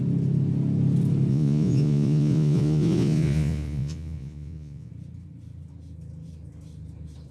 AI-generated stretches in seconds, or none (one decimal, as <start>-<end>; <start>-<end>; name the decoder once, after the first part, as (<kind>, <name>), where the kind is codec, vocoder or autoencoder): 1.3-4.9 (vocoder, Vocos)